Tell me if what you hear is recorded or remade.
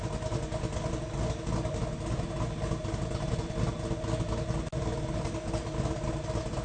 recorded